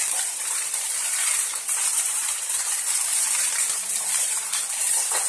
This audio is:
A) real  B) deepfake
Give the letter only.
B